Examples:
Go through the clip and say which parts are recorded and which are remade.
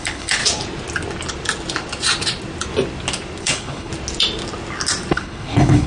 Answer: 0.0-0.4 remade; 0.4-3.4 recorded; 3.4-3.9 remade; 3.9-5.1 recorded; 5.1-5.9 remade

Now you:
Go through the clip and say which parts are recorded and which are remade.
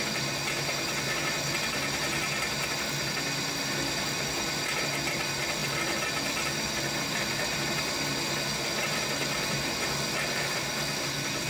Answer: 0.0-11.5 recorded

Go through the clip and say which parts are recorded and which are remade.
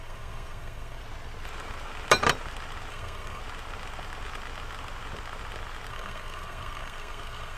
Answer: 0.0-1.0 remade; 1.0-2.9 recorded; 2.9-3.4 remade; 3.4-5.9 recorded; 5.9-7.6 remade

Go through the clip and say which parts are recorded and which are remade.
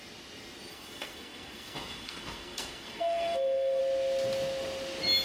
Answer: 0.0-0.7 recorded; 0.7-3.8 remade; 3.8-5.2 recorded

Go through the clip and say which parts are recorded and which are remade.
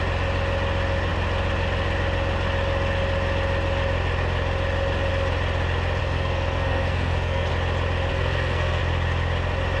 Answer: 0.0-6.0 recorded; 6.0-7.5 remade; 7.5-8.1 recorded; 8.1-8.8 remade; 8.8-9.8 recorded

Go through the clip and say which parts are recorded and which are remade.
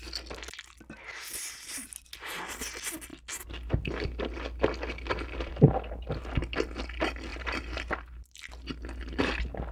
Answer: 0.0-7.3 recorded; 7.3-8.4 remade; 8.4-9.7 recorded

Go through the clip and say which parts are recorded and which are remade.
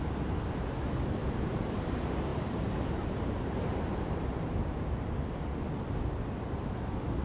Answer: 0.0-1.2 recorded; 1.2-1.8 remade; 1.8-2.3 recorded; 2.3-5.4 remade; 5.4-7.2 recorded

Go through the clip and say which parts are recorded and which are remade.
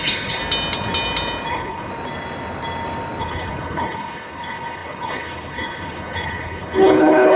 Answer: 0.0-0.4 remade; 0.4-1.5 recorded; 1.5-1.9 remade; 1.9-3.2 recorded; 3.2-7.4 remade